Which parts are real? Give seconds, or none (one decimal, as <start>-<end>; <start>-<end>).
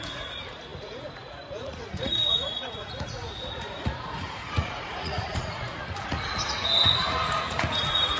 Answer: none